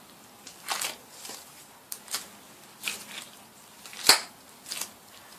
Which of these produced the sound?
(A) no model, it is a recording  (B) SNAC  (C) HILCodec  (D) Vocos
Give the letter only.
A